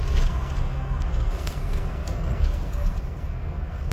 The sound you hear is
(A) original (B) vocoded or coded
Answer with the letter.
B